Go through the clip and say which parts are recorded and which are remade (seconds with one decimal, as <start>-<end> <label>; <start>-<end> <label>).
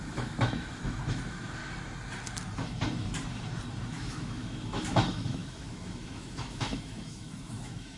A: 0.0-1.6 remade; 1.6-3.9 recorded; 3.9-8.0 remade